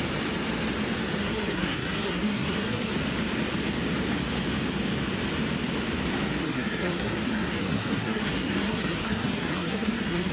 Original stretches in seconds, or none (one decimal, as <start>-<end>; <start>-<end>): 0.0-1.2; 2.9-6.4